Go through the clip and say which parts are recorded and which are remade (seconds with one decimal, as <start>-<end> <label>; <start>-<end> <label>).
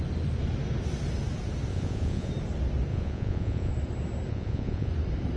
0.0-1.7 recorded; 1.7-2.3 remade; 2.3-2.9 recorded; 2.9-3.7 remade; 3.7-4.3 recorded; 4.3-4.9 remade; 4.9-5.4 recorded